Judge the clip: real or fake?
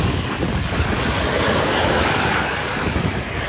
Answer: fake